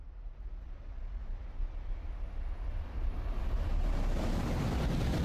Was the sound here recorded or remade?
recorded